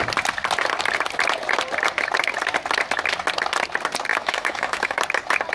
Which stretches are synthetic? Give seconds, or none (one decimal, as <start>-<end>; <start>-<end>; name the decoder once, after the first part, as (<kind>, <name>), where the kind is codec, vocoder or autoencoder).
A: 4.1-5.0 (autoencoder, DAC-VAE)